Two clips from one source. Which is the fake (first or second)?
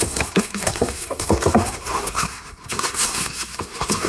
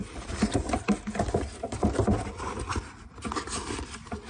first